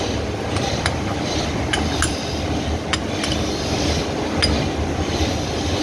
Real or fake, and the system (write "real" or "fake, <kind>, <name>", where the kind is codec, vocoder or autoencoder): real